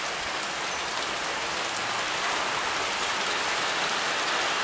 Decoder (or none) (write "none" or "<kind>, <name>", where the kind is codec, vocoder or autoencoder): none